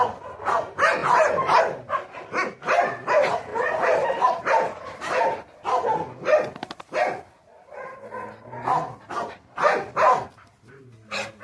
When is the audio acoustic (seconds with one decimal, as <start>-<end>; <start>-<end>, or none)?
0.0-11.4